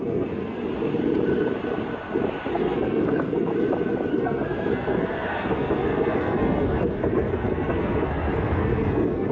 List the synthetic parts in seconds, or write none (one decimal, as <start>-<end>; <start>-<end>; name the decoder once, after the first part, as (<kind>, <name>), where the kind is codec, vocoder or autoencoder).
0.0-0.6 (codec, SNAC); 2.5-3.5; 4.1-9.3